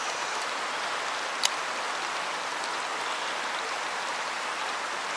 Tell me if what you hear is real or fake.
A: real